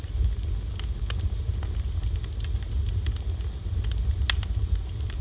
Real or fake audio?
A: real